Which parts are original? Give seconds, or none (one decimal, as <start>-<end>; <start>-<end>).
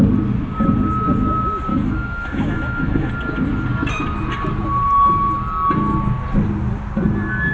0.0-1.7; 3.1-7.5